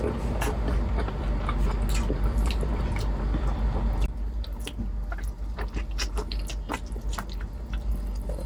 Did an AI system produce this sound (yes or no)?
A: no